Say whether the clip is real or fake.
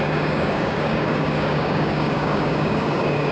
fake